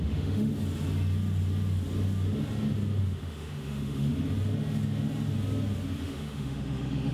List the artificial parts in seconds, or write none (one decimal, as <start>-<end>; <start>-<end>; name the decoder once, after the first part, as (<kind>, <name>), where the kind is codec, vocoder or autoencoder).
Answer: 0.0-0.5 (autoencoder, DAC-VAE); 3.0-4.1; 6.0-7.1